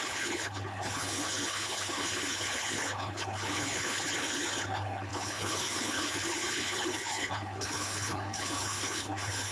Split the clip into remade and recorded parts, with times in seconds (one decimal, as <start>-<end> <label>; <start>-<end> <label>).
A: 0.0-9.5 remade